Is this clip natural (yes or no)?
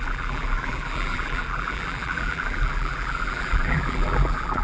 no